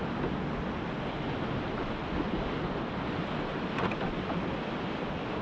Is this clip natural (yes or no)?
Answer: yes